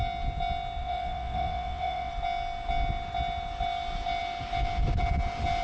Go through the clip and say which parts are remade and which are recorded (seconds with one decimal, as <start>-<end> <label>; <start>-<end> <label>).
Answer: 0.0-0.8 recorded; 0.8-2.1 remade; 2.1-5.6 recorded